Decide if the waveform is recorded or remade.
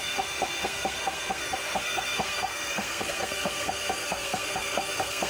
remade